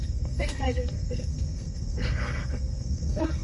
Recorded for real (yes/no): no